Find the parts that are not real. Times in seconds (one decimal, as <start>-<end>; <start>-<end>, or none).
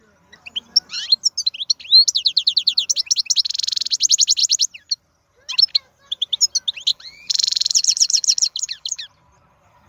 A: 6.9-9.0